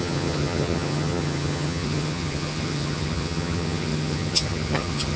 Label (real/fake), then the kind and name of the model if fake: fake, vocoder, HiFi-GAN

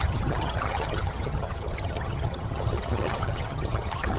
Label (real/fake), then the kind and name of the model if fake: fake, vocoder, HiFi-GAN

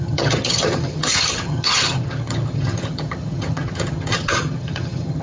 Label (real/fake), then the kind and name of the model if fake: fake, vocoder, HiFi-GAN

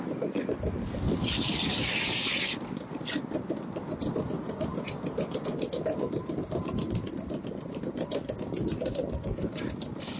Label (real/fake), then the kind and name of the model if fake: real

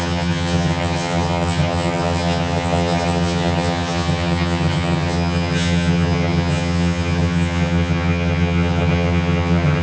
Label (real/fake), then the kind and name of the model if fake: fake, vocoder, HiFi-GAN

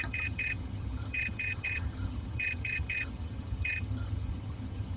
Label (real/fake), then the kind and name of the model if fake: fake, vocoder, HiFi-GAN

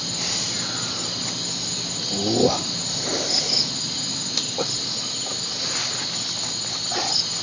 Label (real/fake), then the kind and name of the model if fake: real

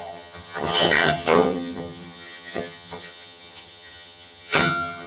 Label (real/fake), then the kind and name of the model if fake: fake, vocoder, HiFi-GAN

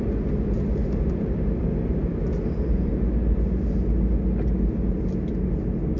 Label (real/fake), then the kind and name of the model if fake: real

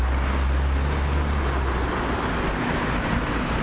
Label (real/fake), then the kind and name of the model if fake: real